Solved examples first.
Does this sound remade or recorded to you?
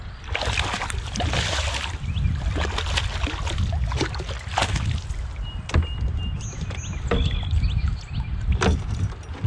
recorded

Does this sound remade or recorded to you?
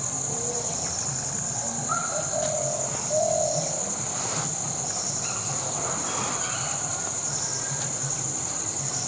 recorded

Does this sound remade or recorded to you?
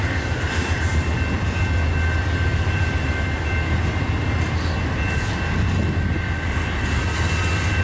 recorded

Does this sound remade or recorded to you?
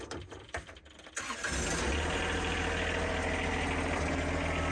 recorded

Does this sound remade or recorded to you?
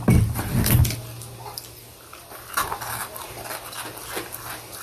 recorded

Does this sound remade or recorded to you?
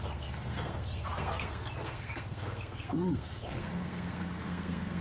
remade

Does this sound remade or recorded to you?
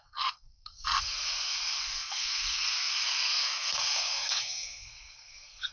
remade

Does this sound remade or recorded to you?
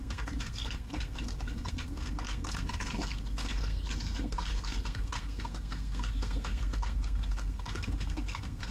remade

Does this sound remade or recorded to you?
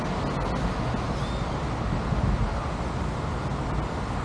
recorded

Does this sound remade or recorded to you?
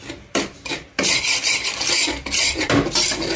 recorded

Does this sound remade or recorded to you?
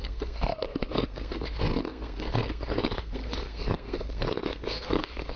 remade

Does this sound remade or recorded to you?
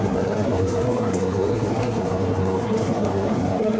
remade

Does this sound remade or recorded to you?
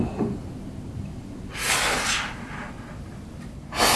recorded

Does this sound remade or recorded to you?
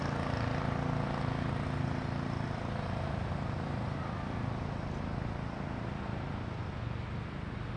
recorded